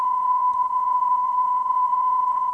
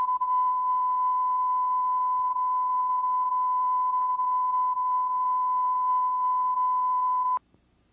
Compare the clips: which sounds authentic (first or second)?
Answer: second